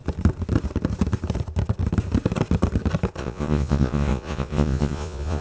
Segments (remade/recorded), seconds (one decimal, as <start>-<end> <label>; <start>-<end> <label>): 0.0-3.2 recorded; 3.2-5.4 remade